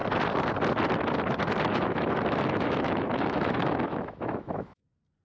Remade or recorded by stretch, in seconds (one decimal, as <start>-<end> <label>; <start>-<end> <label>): 0.0-1.7 recorded; 1.7-4.8 remade; 4.8-5.2 recorded